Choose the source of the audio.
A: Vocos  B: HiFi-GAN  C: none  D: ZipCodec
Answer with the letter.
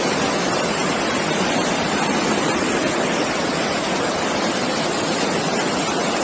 C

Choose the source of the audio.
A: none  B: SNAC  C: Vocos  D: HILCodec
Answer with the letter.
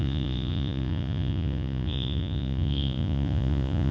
C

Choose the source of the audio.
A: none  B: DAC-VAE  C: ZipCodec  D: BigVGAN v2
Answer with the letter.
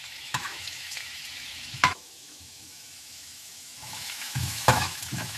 B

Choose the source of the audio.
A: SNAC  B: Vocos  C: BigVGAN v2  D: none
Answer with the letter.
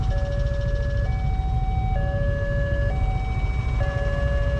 D